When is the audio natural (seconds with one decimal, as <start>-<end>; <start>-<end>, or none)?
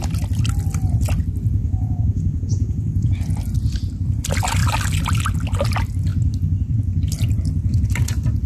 0.0-1.6; 3.1-8.5